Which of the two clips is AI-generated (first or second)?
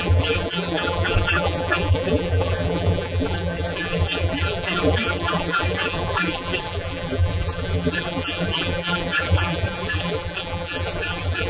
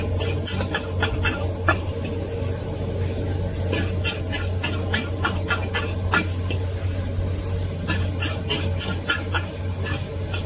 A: first